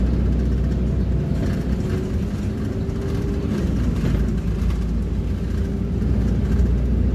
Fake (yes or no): no